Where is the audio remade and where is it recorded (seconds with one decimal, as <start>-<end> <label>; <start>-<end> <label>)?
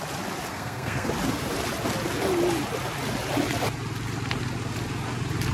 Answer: 0.0-0.5 recorded; 0.5-1.1 remade; 1.1-5.5 recorded